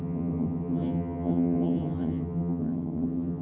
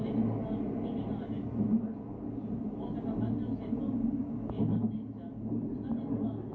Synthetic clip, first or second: first